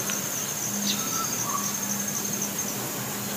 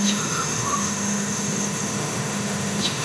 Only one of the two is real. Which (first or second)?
first